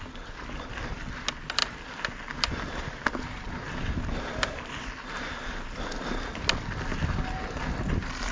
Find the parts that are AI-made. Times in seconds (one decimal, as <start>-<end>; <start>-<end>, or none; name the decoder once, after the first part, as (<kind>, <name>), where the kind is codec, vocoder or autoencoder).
none